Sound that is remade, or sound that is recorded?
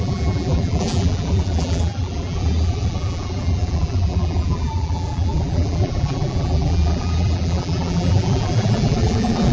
remade